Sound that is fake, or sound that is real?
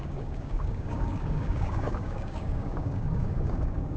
fake